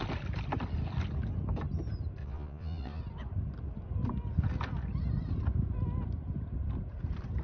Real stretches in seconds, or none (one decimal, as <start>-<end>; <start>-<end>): 0.0-2.2; 3.0-7.4